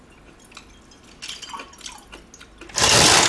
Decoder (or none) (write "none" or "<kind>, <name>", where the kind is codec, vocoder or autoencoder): none